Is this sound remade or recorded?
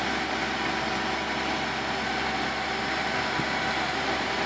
recorded